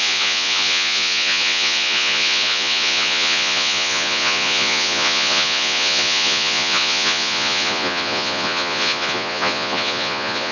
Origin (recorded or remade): remade